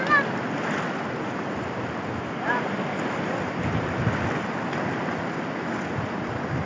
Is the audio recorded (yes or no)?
yes